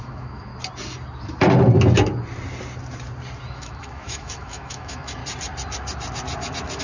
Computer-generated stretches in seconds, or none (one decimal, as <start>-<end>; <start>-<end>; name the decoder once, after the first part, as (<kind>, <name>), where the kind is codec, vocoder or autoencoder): 0.0-0.5 (autoencoder, DAC-VAE); 3.4-5.2